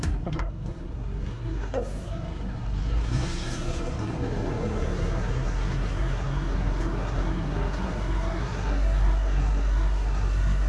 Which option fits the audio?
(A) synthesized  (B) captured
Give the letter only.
A